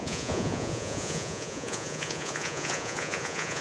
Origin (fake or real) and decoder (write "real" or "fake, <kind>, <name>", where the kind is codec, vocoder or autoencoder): fake, vocoder, Vocos